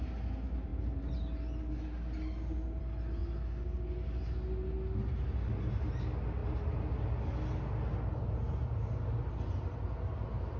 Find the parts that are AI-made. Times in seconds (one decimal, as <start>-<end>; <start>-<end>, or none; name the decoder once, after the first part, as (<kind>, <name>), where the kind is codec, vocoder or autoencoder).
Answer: none

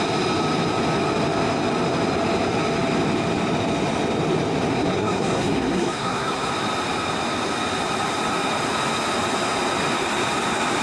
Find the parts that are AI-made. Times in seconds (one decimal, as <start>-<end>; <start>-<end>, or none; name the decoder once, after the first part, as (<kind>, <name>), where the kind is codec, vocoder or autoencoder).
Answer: 4.7-6.5 (codec, SNAC)

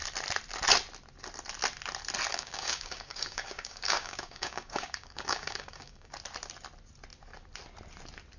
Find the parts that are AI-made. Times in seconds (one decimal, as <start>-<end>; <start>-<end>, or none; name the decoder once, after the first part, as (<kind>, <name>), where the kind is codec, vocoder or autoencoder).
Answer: 2.3-6.1 (codec, DAC)

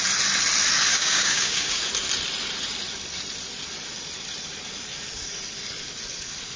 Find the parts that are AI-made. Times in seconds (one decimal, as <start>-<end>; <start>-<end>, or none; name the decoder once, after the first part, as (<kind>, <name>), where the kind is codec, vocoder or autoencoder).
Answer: 0.9-1.8 (codec, DAC)

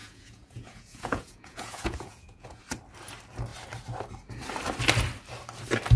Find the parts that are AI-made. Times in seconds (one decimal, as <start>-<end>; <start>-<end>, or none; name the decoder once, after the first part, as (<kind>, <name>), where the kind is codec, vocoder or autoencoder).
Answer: 0.0-2.6 (vocoder, Vocos)

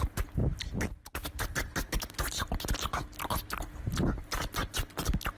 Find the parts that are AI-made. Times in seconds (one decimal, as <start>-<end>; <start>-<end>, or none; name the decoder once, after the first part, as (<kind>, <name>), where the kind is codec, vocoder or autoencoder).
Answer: none

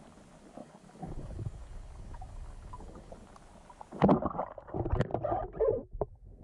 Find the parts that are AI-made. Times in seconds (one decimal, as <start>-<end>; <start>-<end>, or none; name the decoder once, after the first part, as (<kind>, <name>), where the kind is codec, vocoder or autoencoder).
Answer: 0.6-3.1 (codec, DAC)